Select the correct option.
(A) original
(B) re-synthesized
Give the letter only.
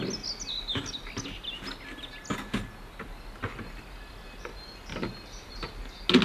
A